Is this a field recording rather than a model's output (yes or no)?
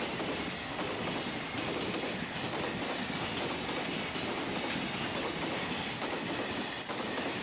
yes